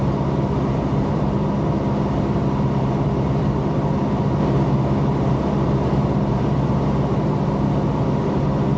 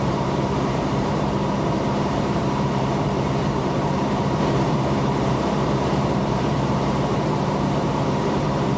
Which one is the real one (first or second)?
first